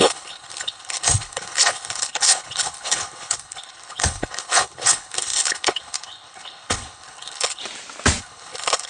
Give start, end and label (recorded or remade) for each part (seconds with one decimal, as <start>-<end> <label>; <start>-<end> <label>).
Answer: 0.0-7.6 remade; 7.6-8.2 recorded; 8.2-8.9 remade